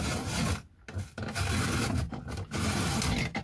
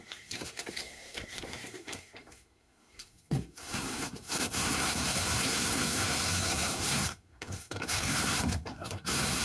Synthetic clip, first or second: second